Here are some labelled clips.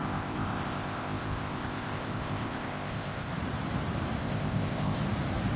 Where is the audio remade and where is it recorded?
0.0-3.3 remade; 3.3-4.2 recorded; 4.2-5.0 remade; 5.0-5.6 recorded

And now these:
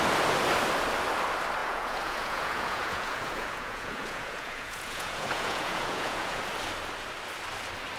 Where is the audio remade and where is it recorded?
0.0-1.6 recorded; 1.6-6.4 remade; 6.4-8.0 recorded

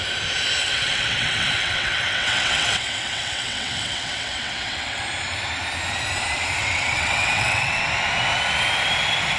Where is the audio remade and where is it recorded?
0.0-0.6 recorded; 0.6-5.0 remade; 5.0-6.6 recorded; 6.6-7.8 remade; 7.8-9.4 recorded

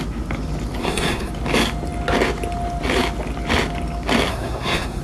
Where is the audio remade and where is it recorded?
0.0-0.8 recorded; 0.8-1.3 remade; 1.3-4.3 recorded; 4.3-5.0 remade

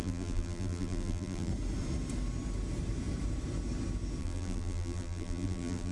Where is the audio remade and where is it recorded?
0.0-1.5 remade; 1.5-4.2 recorded; 4.2-5.9 remade

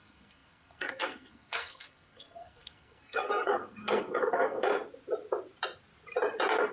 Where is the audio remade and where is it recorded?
0.0-4.7 remade; 4.7-6.7 recorded

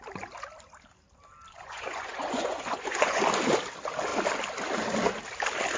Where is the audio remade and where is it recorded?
0.0-1.5 recorded; 1.5-3.2 remade; 3.2-5.8 recorded

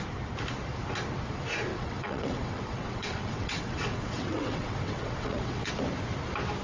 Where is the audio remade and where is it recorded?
0.0-1.7 recorded; 1.7-5.7 remade; 5.7-6.6 recorded